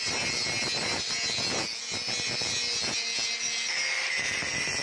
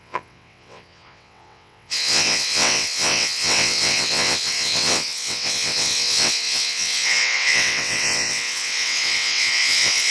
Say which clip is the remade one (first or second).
second